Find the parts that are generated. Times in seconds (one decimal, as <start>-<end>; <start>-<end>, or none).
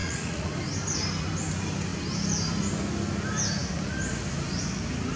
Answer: 0.0-0.5